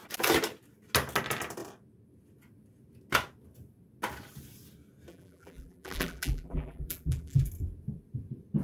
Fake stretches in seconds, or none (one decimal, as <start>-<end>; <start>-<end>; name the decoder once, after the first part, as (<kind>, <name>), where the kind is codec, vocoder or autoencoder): 5.1-7.5 (vocoder, BigVGAN v2)